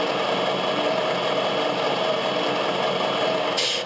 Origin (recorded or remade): recorded